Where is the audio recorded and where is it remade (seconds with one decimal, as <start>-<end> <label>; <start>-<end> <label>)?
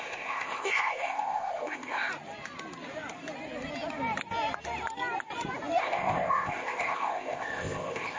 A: 0.0-2.1 remade; 2.1-5.8 recorded; 5.8-8.2 remade